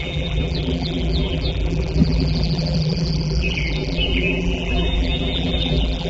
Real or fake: fake